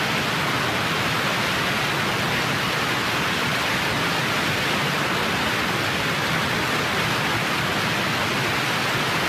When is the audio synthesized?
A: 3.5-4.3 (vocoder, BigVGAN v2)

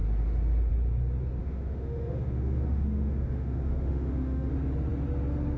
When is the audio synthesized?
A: 1.4-4.5 (autoencoder, DAC-VAE)

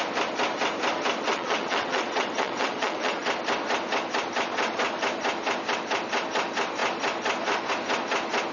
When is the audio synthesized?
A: 1.3-3.2 (vocoder, WaveNeXt)